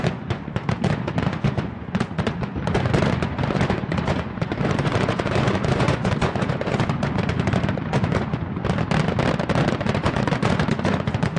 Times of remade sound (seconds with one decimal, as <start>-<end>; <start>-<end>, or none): 0.0-8.6; 9.6-11.4